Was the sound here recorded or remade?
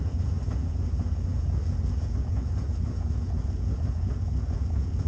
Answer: remade